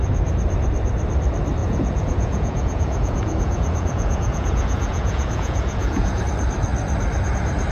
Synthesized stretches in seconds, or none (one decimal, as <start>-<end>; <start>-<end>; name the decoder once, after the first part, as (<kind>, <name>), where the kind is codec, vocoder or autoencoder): 1.6-6.2 (vocoder, Vocos)